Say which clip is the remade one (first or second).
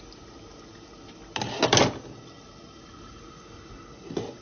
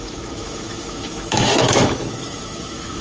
second